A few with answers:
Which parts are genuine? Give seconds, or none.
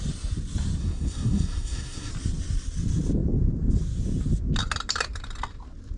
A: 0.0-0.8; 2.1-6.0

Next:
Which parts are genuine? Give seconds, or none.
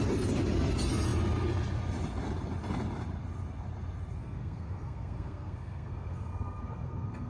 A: 0.0-4.2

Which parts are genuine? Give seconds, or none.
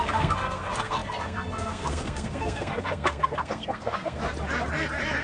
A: 4.2-5.2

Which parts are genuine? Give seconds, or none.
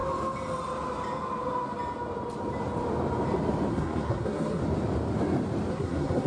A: 0.0-3.7; 4.6-5.7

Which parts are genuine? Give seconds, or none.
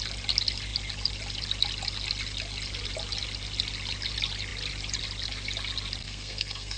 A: 0.0-6.0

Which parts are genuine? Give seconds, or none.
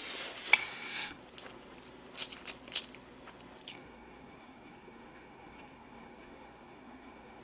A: 0.0-0.6; 1.2-3.7